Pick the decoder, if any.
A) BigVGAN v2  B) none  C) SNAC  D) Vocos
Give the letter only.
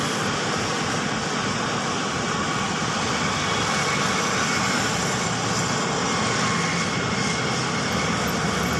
B